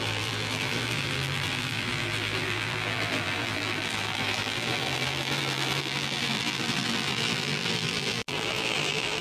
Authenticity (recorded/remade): remade